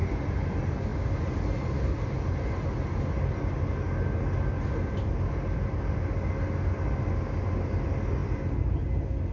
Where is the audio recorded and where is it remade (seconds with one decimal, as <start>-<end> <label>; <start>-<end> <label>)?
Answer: 0.0-9.3 recorded